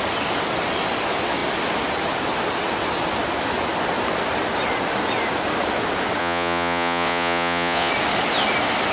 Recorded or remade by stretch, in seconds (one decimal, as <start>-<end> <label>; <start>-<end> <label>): 0.0-6.2 recorded; 6.2-7.9 remade; 7.9-8.9 recorded

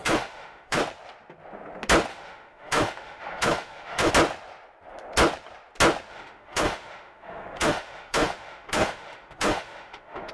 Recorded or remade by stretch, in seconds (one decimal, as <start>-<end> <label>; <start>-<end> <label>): 0.0-0.8 remade; 0.8-2.1 recorded; 2.1-4.1 remade; 4.1-6.1 recorded; 6.1-10.3 remade